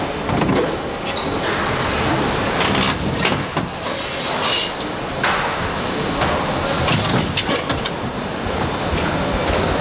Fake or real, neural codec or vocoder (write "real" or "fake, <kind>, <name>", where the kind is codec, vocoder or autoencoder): real